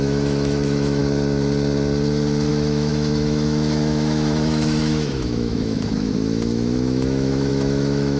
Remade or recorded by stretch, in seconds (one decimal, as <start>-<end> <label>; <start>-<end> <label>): 0.0-1.0 remade; 1.0-2.5 recorded; 2.5-8.2 remade

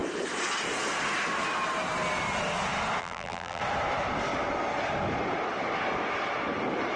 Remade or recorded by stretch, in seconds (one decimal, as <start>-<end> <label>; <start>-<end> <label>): 0.0-3.0 recorded; 3.0-3.6 remade; 3.6-7.0 recorded